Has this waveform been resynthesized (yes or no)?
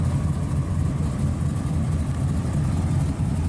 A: no